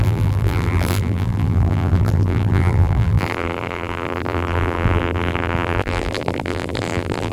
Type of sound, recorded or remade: remade